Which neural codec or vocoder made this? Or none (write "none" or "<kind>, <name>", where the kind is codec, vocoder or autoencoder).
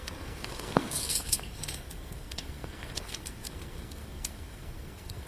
codec, SNAC